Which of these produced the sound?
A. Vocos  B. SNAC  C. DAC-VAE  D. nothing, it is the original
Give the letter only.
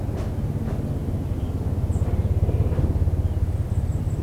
D